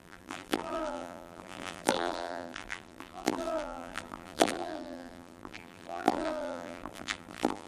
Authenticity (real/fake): fake